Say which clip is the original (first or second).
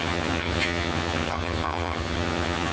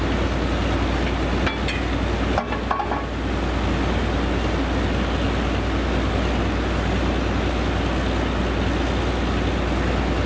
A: second